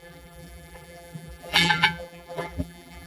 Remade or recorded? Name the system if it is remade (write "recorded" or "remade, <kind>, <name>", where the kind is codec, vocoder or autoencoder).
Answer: remade, vocoder, BigVGAN v2